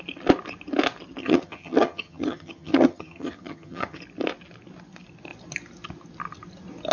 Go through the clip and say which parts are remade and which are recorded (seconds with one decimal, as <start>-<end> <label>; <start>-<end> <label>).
0.0-1.2 recorded; 1.2-4.0 remade; 4.0-6.9 recorded